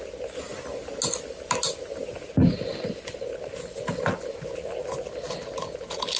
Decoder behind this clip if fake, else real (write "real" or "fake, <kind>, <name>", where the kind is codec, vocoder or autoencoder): real